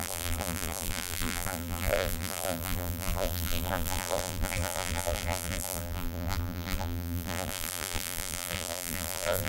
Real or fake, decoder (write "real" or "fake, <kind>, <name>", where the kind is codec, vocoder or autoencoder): fake, vocoder, BigVGAN v2